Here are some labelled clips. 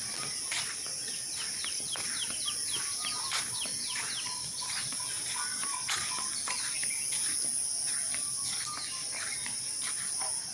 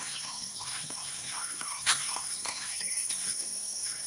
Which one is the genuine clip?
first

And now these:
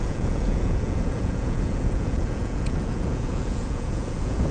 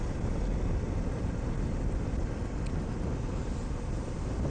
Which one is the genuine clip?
second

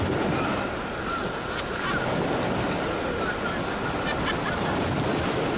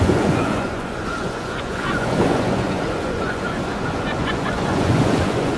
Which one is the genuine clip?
first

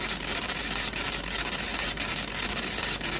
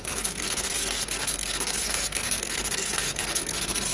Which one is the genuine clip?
first